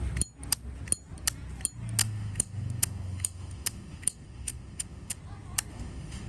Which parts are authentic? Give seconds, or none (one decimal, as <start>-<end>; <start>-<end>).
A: 0.0-2.0; 5.2-5.7